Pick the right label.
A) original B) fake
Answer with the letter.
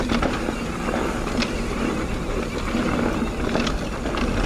A